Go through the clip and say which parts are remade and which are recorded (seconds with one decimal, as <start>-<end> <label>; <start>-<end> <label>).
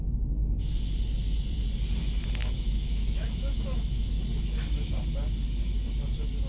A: 0.0-2.4 recorded; 2.4-4.2 remade; 4.2-6.5 recorded